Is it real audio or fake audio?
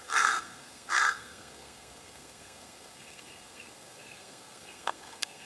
fake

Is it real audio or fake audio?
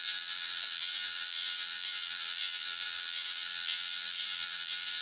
fake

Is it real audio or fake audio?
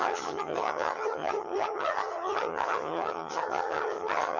fake